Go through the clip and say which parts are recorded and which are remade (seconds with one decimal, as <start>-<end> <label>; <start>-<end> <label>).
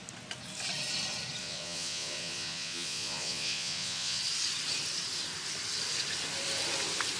0.0-1.4 recorded; 1.4-4.2 remade; 4.2-7.2 recorded